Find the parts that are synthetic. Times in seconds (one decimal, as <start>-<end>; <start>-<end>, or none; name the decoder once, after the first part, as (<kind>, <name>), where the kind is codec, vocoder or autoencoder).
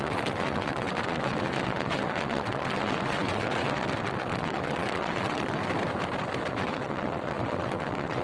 0.0-5.6 (vocoder, WaveNeXt); 6.5-8.2